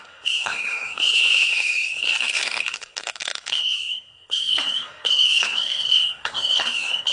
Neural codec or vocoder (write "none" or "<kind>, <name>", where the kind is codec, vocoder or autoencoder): codec, SNAC